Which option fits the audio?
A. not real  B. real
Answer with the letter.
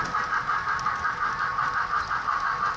B